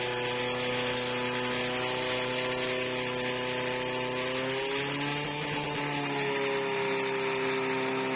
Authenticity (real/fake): real